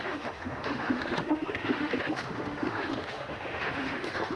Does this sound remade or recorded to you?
remade